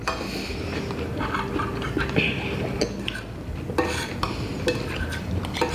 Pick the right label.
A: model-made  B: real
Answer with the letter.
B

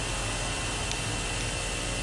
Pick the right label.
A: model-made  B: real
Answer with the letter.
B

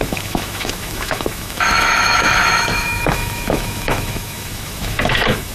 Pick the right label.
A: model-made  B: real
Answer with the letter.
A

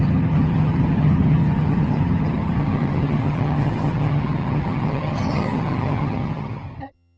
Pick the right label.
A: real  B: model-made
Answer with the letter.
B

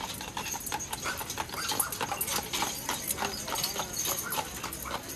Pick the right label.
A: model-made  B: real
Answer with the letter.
B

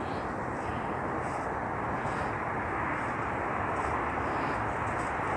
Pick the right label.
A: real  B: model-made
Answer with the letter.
A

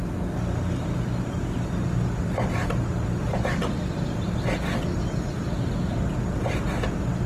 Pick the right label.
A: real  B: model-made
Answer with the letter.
A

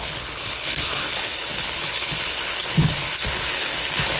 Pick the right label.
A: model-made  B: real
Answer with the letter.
A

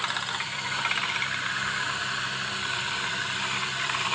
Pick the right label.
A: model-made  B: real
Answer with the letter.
A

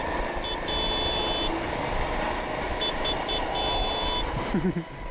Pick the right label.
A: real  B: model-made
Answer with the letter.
A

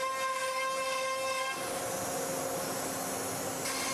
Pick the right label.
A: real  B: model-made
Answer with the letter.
A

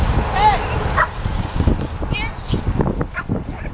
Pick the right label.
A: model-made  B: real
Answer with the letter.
B